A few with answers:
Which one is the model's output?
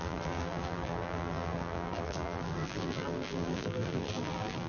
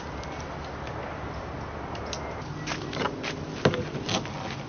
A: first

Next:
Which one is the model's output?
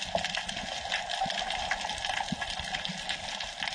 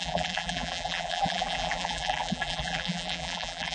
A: second